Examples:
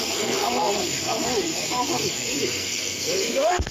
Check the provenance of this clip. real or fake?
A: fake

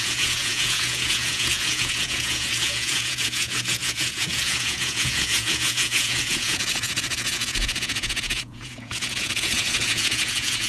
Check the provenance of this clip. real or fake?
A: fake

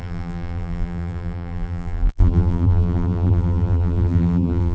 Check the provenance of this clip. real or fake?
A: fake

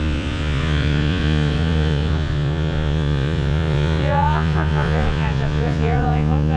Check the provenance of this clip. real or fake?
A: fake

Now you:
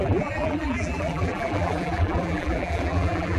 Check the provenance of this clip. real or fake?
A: fake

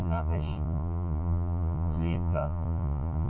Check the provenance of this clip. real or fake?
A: fake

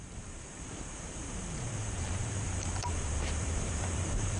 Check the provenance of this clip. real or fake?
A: fake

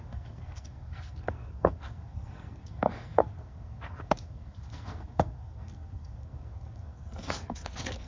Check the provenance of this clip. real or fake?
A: fake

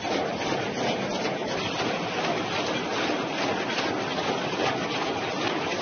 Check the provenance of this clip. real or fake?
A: real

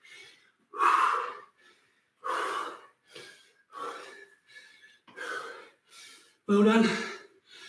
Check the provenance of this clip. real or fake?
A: real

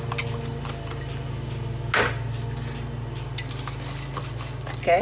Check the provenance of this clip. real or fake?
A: real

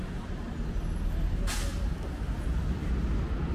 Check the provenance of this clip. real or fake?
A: real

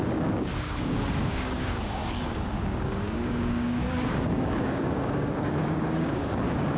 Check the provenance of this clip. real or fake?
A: fake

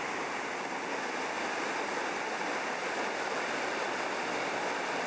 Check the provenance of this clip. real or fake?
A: real